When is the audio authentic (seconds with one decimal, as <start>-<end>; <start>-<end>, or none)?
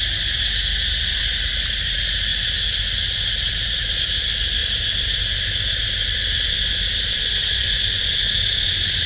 0.0-7.5; 8.2-9.1